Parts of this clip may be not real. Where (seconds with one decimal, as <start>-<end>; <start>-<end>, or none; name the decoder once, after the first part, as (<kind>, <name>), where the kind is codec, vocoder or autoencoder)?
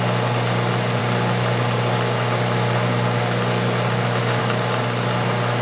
none